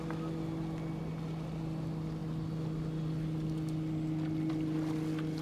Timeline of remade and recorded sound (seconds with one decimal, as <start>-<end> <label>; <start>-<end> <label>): 0.0-5.4 recorded